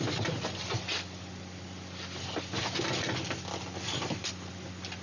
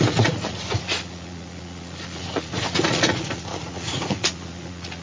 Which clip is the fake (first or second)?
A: second